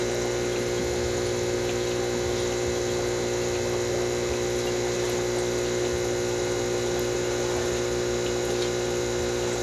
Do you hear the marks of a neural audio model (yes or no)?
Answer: no